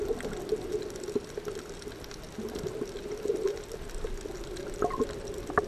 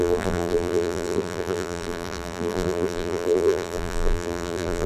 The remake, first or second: second